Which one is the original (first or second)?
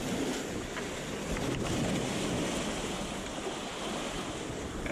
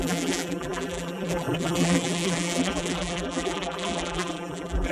first